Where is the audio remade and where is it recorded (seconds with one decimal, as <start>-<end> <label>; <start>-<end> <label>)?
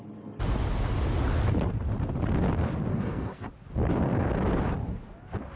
0.0-2.9 recorded; 2.9-3.5 remade; 3.5-5.6 recorded